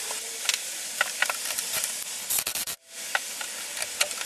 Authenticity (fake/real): real